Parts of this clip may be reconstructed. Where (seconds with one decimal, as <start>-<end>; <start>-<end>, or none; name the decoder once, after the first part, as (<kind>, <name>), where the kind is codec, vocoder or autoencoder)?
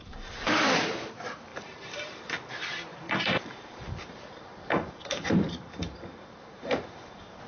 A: 0.0-0.5 (vocoder, BigVGAN v2); 1.5-2.5; 2.9-7.5